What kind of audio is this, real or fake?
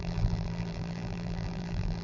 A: fake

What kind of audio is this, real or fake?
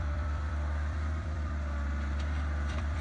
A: fake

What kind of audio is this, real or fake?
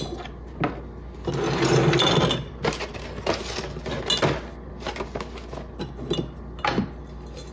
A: real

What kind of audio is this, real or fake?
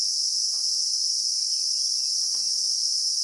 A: real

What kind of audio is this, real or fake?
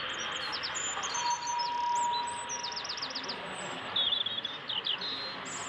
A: real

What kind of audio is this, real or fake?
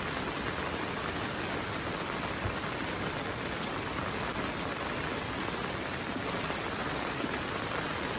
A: fake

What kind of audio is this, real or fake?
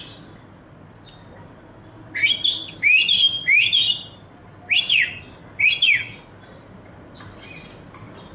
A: real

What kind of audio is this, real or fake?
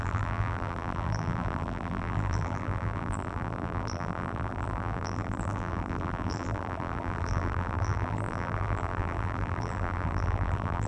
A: fake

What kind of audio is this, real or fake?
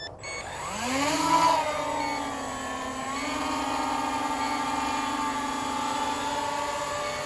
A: real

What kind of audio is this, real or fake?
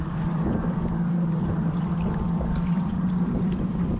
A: fake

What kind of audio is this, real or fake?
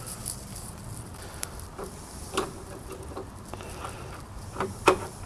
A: fake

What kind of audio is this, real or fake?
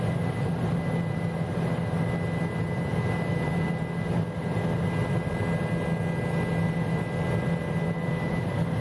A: real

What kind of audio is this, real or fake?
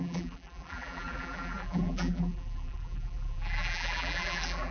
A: fake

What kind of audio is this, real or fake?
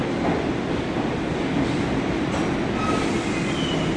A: real